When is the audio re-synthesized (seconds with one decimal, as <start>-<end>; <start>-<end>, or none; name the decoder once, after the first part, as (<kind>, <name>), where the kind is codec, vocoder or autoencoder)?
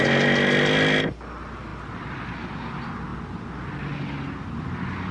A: none